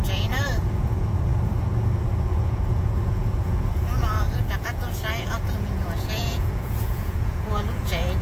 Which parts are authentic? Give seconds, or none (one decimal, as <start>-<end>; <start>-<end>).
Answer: none